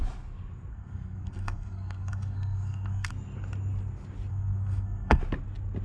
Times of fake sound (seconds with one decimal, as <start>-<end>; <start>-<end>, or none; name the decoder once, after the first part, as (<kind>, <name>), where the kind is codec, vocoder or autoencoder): 0.7-3.1 (codec, SNAC); 4.3-5.2